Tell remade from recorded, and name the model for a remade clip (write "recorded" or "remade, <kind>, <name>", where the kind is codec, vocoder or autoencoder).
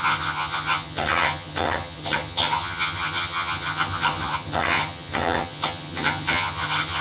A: remade, vocoder, HiFi-GAN